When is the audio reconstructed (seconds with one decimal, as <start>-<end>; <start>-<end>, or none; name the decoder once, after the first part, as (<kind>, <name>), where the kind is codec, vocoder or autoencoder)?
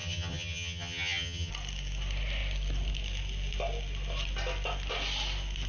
0.0-1.5 (vocoder, HiFi-GAN)